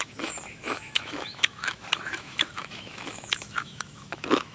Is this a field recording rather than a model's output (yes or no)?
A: no